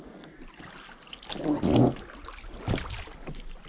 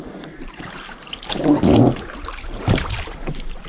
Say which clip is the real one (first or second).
first